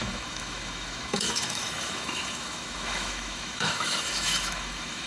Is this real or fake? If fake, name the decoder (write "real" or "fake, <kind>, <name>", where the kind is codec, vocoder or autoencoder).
fake, autoencoder, DAC-VAE